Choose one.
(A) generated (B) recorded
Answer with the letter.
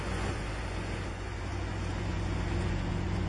A